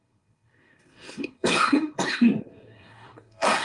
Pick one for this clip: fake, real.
fake